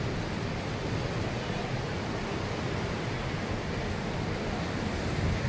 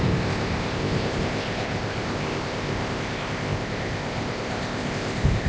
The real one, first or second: first